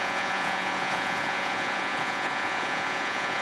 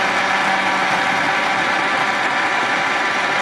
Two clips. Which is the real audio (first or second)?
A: second